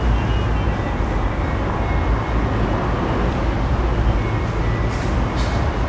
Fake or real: real